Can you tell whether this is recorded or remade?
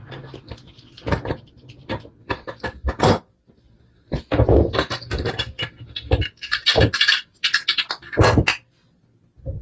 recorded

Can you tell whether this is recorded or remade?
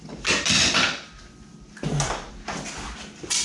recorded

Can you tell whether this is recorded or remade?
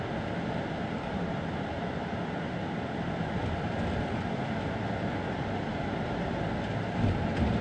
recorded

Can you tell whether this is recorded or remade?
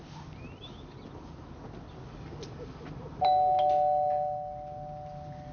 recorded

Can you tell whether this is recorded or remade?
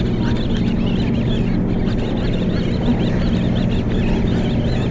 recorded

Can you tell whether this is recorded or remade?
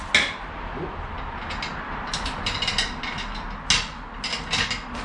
recorded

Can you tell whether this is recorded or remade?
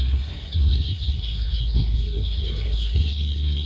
remade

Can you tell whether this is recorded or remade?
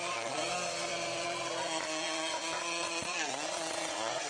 remade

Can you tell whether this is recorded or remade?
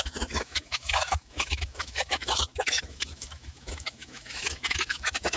remade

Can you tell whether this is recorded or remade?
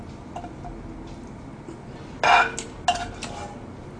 recorded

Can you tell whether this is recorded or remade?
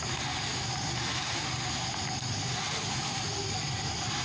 recorded